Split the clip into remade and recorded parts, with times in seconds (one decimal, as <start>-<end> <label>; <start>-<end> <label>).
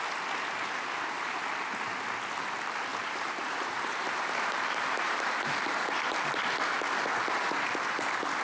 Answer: 0.0-2.9 recorded; 2.9-6.4 remade; 6.4-8.4 recorded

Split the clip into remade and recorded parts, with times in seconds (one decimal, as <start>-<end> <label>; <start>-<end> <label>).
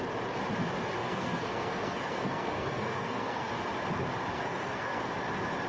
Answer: 0.0-1.0 recorded; 1.0-3.5 remade; 3.5-4.3 recorded; 4.3-5.1 remade; 5.1-5.7 recorded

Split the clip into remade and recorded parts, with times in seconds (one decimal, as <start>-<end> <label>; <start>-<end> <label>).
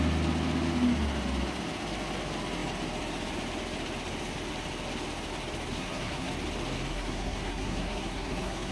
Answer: 0.0-5.7 recorded; 5.7-6.3 remade; 6.3-6.9 recorded; 6.9-8.7 remade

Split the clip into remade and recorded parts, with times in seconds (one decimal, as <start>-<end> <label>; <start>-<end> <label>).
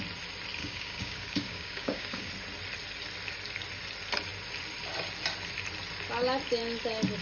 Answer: 0.0-0.6 recorded; 0.6-2.3 remade; 2.3-7.2 recorded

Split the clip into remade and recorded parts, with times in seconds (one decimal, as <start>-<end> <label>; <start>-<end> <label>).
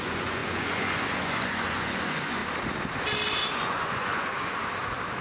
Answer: 0.0-2.4 remade; 2.4-3.5 recorded; 3.5-4.6 remade; 4.6-5.2 recorded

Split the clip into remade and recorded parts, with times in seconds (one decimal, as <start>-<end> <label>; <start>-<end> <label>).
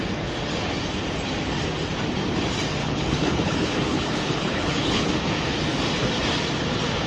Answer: 0.0-2.8 recorded; 2.8-5.1 remade; 5.1-7.1 recorded